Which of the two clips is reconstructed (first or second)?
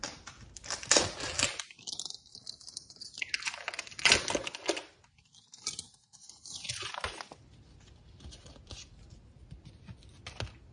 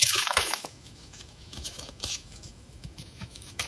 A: second